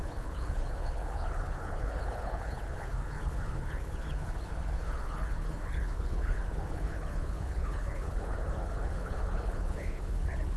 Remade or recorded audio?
remade